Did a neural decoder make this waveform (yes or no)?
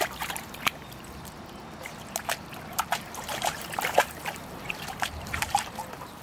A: yes